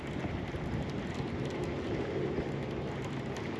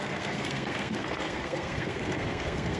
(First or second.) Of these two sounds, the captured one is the first